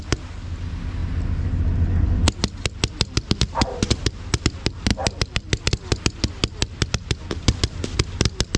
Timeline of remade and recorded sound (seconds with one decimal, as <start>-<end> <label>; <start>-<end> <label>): 0.0-8.6 recorded